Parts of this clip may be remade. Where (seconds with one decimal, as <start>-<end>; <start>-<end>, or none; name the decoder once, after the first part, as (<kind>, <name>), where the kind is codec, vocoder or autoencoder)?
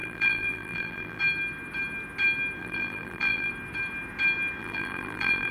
0.0-1.2 (vocoder, BigVGAN v2); 2.6-3.5; 4.6-5.5